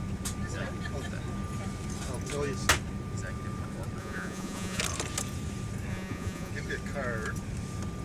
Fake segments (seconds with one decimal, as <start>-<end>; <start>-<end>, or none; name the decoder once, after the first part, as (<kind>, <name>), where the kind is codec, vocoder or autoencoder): 4.0-4.8 (vocoder, Vocos); 5.9-6.5

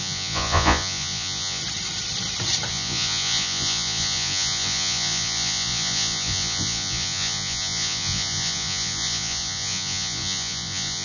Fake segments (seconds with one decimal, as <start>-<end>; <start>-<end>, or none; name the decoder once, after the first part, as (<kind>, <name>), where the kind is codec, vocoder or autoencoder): 0.0-1.6 (vocoder, Vocos); 2.7-11.0

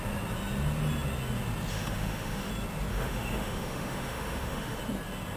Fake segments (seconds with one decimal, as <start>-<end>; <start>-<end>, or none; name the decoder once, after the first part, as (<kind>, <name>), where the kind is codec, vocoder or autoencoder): 1.7-2.5 (autoencoder, DAC-VAE); 2.9-4.8

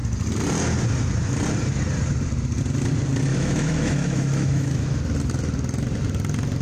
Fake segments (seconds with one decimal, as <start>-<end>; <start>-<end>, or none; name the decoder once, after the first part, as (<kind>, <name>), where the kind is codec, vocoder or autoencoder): 3.3-5.0 (autoencoder, DAC-VAE)

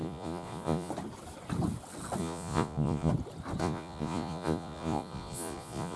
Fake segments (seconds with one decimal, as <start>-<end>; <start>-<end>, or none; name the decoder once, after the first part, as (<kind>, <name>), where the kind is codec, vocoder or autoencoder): 0.0-0.9 (vocoder, Vocos); 2.2-3.1; 3.6-6.0

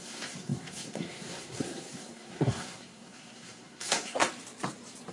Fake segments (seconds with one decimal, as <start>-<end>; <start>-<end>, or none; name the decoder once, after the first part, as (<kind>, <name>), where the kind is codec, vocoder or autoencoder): 0.0-4.2 (codec, SNAC)

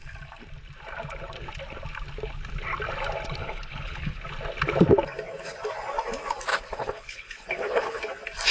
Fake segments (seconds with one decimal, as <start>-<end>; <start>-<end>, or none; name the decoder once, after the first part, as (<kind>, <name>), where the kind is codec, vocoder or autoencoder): 3.4-4.2 (codec, HILCodec); 6.5-8.0

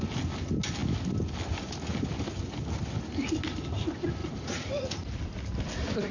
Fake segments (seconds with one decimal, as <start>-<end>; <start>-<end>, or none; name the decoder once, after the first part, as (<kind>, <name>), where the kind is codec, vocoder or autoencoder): 4.2-4.7 (vocoder, Vocos)